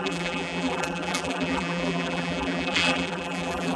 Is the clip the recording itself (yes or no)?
no